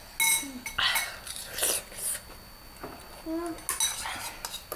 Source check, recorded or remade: recorded